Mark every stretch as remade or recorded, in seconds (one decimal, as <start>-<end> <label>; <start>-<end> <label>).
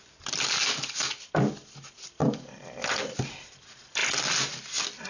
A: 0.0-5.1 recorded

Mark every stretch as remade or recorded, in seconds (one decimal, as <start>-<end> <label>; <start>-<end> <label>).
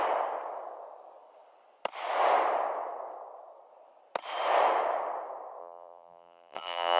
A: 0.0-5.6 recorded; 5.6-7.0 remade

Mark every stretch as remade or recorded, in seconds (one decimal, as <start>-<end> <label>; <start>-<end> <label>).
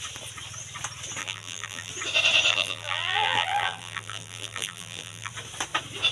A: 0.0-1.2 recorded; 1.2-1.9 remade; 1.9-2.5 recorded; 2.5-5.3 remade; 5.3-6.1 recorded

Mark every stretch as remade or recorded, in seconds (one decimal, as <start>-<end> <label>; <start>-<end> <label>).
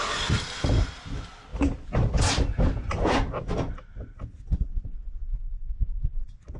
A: 0.0-1.5 recorded; 1.5-2.3 remade; 2.3-6.6 recorded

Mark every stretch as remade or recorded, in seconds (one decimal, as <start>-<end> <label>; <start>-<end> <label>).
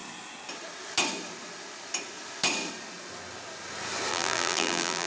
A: 0.0-4.1 recorded; 4.1-5.1 remade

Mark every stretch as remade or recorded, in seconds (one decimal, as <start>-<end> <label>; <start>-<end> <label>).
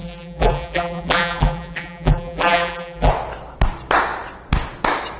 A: 0.0-3.1 remade; 3.1-5.2 recorded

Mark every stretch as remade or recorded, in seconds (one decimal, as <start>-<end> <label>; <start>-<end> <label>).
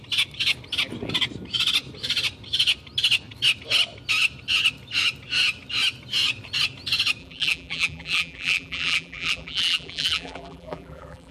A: 0.0-7.2 recorded; 7.2-11.3 remade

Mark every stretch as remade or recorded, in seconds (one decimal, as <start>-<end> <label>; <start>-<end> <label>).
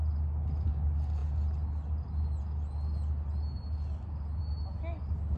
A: 0.0-5.4 recorded